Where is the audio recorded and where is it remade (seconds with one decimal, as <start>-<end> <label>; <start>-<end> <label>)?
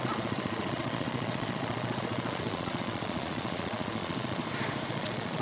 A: 0.0-4.4 remade; 4.4-4.9 recorded; 4.9-5.4 remade